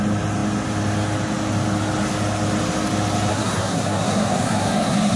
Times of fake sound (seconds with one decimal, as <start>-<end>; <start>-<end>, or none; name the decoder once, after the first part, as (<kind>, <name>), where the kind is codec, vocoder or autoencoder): 3.3-5.2 (codec, SNAC)

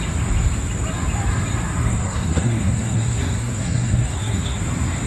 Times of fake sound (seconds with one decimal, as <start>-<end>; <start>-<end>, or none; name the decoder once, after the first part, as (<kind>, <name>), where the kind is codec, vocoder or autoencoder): 1.8-4.6 (codec, SNAC)

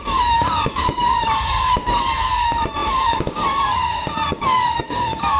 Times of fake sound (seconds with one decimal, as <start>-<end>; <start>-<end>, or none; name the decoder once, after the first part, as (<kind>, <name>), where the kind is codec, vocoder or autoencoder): 0.0-5.4 (codec, DAC)

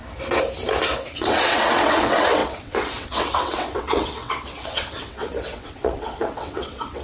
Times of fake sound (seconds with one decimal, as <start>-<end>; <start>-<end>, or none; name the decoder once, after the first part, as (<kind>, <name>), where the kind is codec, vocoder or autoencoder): 1.1-7.0 (vocoder, WaveNeXt)